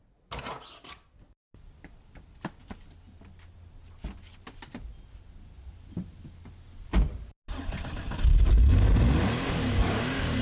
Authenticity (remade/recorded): recorded